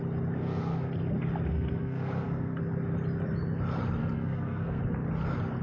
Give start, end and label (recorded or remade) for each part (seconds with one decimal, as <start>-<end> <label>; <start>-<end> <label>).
0.0-0.4 recorded; 0.4-0.9 remade; 0.9-1.5 recorded; 1.5-2.6 remade; 2.6-4.0 recorded; 4.0-4.8 remade; 4.8-5.6 recorded